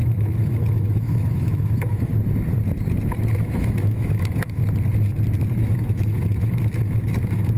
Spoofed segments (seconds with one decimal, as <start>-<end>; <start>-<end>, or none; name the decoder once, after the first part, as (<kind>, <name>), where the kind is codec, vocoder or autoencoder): 0.0-2.1 (autoencoder, DAC-VAE); 3.3-4.6; 5.6-7.6